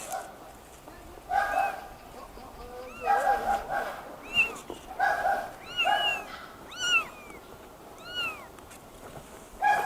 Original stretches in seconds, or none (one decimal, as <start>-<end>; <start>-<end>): 0.0-9.9